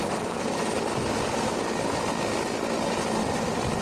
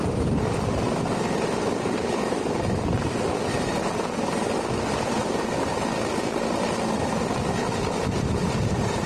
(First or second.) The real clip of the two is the first